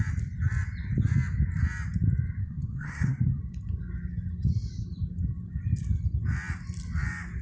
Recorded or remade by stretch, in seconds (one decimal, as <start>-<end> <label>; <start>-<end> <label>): 0.0-2.4 recorded; 2.4-3.4 remade; 3.4-7.4 recorded